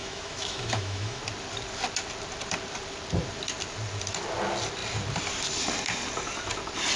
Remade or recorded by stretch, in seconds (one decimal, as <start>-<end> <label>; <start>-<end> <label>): 0.0-1.2 remade; 1.2-7.0 recorded